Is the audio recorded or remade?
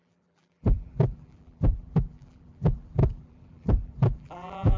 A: remade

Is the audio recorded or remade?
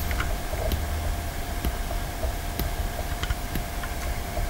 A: remade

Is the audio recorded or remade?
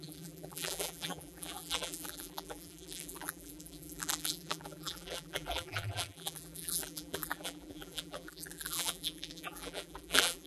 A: remade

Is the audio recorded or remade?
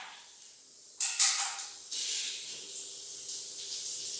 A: recorded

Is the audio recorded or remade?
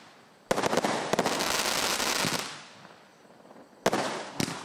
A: recorded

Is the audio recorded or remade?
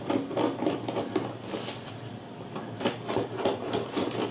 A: recorded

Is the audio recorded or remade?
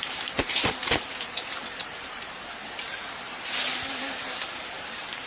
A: remade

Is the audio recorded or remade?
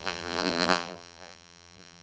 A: remade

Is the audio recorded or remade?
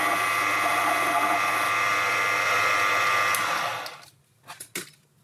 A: recorded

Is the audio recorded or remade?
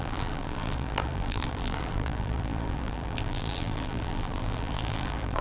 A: remade